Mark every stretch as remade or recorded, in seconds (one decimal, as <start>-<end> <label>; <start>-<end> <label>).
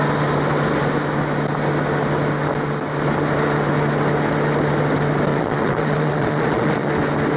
0.0-5.3 recorded; 5.3-6.9 remade; 6.9-7.4 recorded